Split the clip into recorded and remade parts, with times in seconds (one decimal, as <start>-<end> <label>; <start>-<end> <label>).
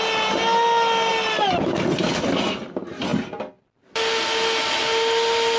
0.0-5.6 recorded